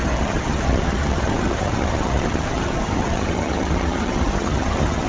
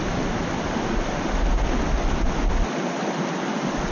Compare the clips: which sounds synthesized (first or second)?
first